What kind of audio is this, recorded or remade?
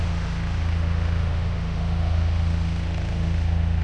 remade